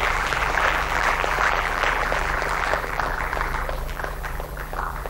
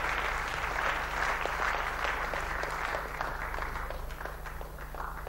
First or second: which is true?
second